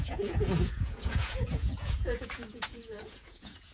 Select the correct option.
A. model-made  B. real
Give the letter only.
A